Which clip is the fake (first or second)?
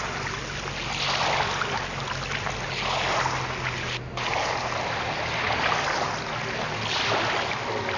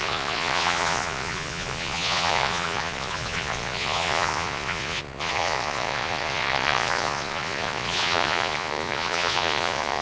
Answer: second